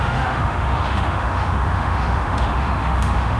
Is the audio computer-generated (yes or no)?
yes